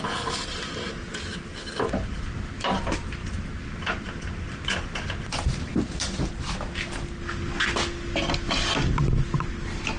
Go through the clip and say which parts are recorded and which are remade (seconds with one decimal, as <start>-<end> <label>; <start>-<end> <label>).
0.0-10.0 recorded